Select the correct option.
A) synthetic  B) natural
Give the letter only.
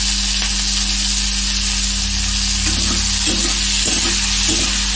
B